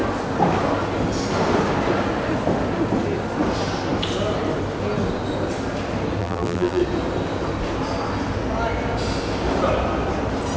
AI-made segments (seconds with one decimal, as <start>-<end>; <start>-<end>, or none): 6.2-6.8